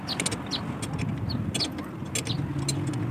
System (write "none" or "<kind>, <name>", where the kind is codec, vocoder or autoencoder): none